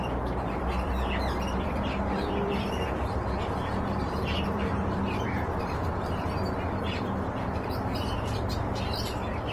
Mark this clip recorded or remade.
remade